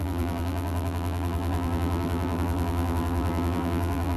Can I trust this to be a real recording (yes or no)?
no